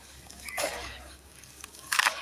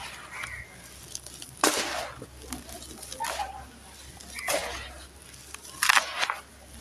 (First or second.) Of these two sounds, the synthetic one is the first